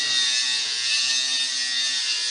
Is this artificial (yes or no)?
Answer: no